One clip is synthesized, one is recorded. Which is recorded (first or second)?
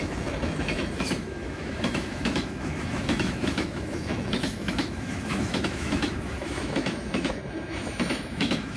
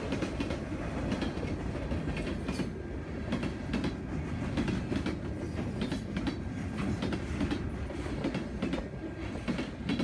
second